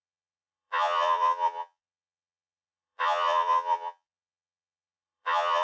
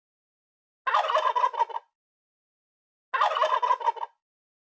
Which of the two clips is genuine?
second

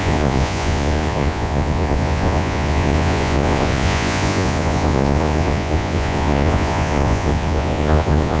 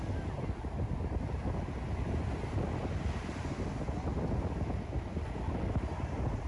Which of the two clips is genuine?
second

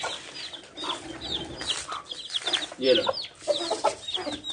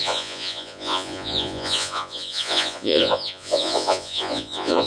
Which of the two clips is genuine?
first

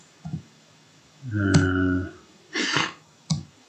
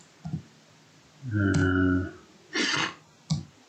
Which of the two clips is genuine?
second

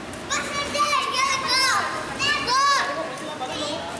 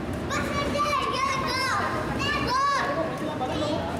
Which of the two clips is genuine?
first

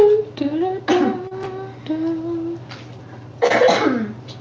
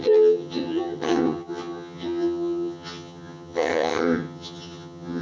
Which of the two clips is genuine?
first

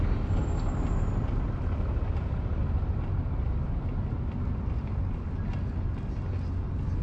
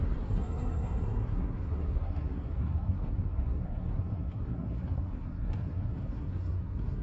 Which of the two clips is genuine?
first